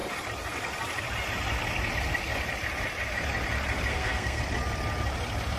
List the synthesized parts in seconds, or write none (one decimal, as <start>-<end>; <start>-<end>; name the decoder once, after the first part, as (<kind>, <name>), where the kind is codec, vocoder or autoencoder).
3.9-4.4 (codec, SNAC)